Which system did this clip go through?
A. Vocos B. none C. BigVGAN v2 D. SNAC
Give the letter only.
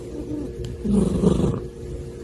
B